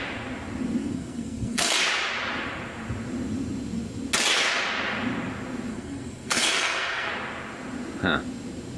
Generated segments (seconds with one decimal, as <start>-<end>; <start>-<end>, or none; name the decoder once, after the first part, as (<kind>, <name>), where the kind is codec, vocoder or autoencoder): 0.8-1.8 (codec, SNAC); 5.7-7.1